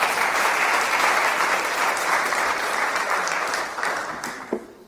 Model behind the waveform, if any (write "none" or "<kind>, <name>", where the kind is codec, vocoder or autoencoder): vocoder, BigVGAN v2